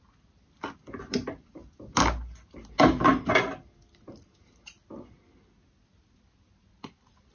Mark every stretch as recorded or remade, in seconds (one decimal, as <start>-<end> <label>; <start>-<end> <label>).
0.0-7.3 recorded